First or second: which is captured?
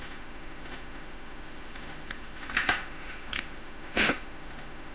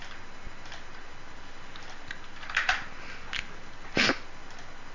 second